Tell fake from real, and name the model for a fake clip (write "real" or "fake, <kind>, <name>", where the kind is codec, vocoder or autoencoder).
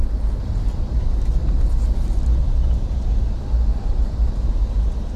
real